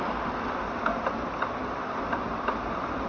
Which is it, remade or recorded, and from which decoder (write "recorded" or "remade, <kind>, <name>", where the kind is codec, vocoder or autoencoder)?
recorded